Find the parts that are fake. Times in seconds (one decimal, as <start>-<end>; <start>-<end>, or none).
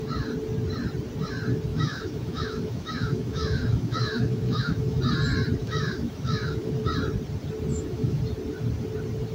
1.7-5.0; 5.6-6.7; 7.7-8.2